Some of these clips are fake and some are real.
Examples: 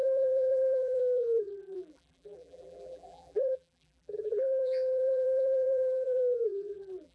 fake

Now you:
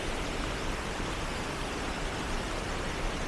fake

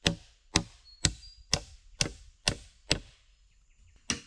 real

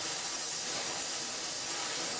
fake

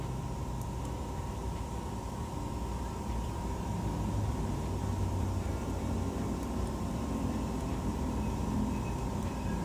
fake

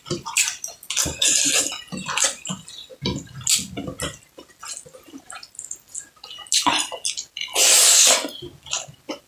real